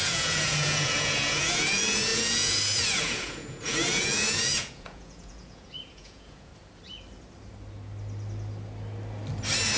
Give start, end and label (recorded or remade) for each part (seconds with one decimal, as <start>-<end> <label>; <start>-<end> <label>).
0.0-6.5 remade; 6.5-9.8 recorded